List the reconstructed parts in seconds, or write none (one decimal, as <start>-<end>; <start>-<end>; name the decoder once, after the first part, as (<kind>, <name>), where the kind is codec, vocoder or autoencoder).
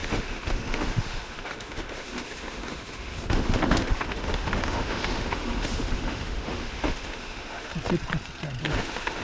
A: 0.0-7.7 (autoencoder, DAC-VAE); 8.6-9.2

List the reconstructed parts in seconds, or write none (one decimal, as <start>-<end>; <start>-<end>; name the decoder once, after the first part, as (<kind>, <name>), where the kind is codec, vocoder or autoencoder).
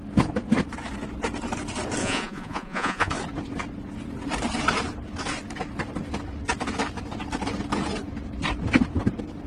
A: 2.0-3.1 (vocoder, Vocos)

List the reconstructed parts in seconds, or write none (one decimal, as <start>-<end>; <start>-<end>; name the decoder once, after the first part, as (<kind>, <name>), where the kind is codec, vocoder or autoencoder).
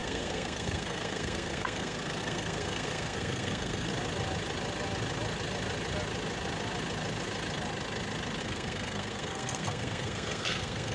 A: 0.0-3.9 (codec, SNAC); 8.4-10.9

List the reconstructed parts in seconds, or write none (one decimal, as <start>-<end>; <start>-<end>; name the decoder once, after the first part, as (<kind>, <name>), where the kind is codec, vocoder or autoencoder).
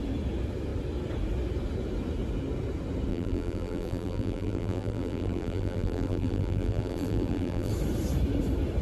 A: 3.1-7.7 (vocoder, BigVGAN v2)